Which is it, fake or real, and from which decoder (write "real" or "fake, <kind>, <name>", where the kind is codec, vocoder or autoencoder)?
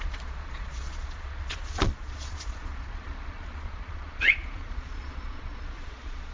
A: fake, vocoder, Vocos